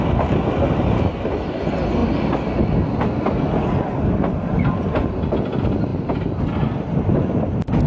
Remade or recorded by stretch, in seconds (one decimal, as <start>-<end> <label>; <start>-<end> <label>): 0.0-7.9 recorded